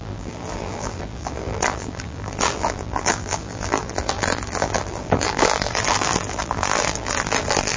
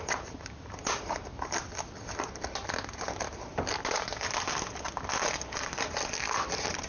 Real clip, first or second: second